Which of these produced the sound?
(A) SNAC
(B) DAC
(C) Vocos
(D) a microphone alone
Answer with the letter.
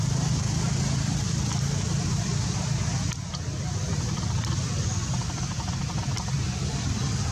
D